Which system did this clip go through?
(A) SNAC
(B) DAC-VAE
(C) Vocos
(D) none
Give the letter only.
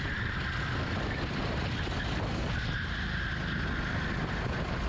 D